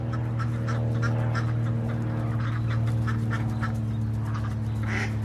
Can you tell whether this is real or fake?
real